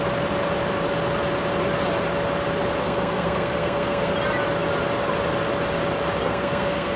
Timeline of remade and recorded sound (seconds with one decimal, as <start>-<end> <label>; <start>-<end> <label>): 0.0-2.8 recorded; 2.8-4.1 remade; 4.1-6.2 recorded; 6.2-7.0 remade

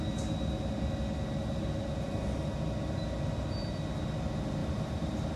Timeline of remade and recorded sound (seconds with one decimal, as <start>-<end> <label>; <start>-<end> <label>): 0.0-4.6 recorded; 4.6-5.4 remade

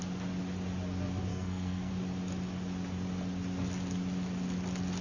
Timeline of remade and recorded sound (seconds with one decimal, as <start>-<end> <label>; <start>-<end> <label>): 0.0-1.3 recorded; 1.3-1.9 remade; 1.9-5.0 recorded

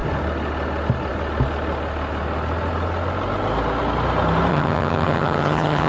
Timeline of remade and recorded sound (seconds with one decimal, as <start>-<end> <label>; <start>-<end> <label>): 0.0-4.5 recorded; 4.5-5.9 remade